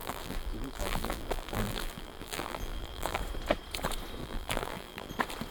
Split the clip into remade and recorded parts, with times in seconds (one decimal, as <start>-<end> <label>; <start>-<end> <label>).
0.0-3.2 remade; 3.2-4.2 recorded; 4.2-5.1 remade; 5.1-5.5 recorded